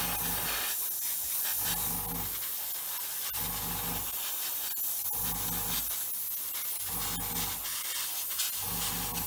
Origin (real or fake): real